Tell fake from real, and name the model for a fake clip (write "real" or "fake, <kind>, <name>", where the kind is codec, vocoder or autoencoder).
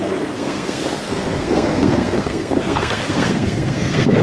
fake, codec, SNAC